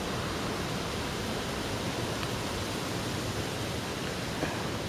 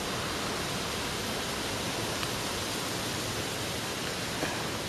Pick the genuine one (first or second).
second